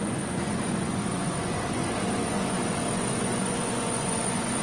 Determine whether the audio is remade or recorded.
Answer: remade